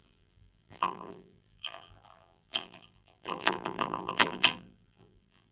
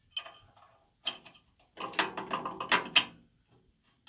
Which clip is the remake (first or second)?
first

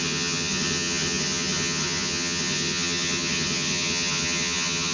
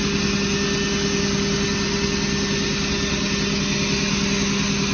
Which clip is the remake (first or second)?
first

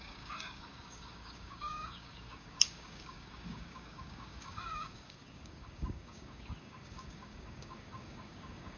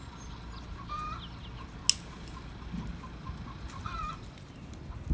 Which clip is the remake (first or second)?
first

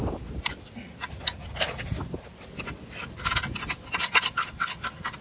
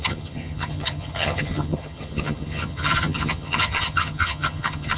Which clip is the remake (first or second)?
second